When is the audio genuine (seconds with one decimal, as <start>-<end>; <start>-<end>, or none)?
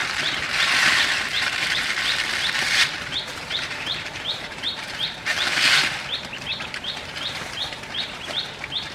1.8-3.3; 5.6-8.9